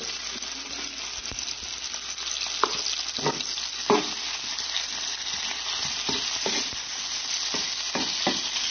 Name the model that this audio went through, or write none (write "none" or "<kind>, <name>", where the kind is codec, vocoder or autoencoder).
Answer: none